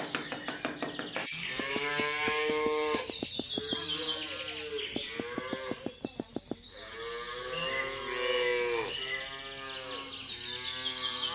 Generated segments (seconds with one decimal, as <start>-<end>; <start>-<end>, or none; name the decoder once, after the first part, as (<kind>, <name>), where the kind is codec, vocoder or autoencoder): 1.2-3.1 (codec, DAC)